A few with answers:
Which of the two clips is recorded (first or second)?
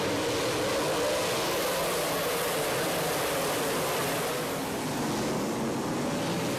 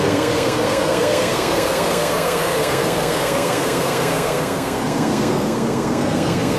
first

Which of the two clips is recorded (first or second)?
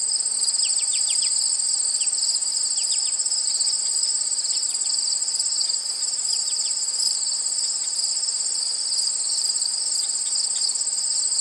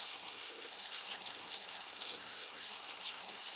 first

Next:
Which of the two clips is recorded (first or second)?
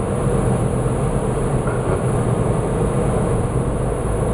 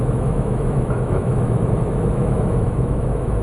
first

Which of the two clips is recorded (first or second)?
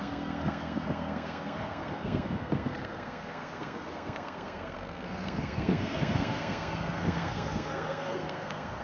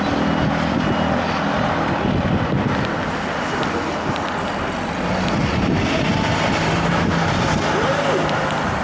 second